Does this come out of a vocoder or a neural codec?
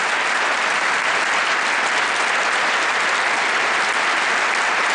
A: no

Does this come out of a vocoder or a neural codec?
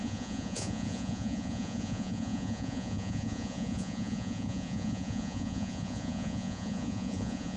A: yes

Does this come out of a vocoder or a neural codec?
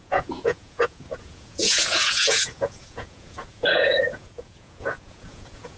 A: yes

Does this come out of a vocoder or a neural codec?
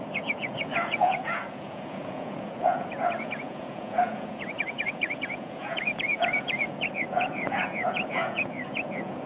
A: yes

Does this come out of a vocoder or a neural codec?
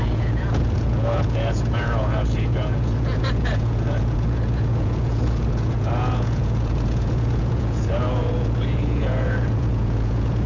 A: yes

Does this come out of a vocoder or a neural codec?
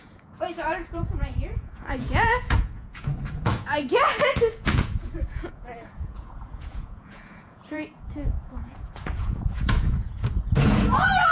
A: yes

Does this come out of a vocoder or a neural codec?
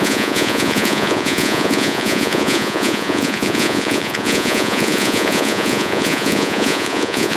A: yes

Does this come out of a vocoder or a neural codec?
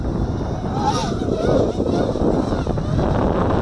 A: no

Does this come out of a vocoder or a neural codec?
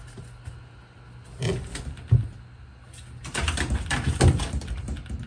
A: no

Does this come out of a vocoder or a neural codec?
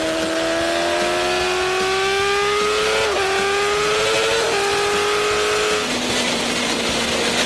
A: no